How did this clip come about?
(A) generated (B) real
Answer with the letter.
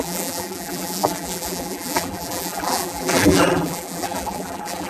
A